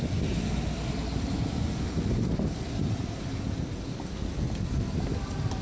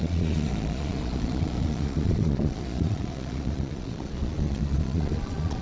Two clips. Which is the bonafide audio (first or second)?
first